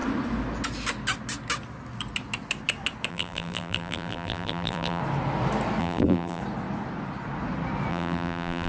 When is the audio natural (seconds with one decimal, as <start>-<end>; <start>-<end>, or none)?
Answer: 0.0-3.1; 5.0-5.8; 6.4-7.9